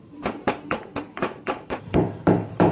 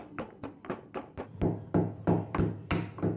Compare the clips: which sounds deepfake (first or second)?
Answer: first